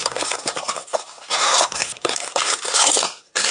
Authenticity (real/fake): fake